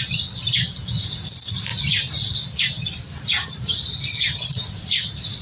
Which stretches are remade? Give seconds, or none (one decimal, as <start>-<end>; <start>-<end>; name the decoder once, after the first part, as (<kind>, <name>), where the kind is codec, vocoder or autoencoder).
none